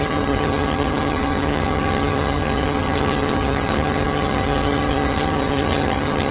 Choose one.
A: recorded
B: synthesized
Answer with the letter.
B